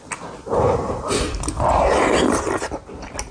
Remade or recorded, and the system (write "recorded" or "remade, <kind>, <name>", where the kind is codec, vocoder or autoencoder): recorded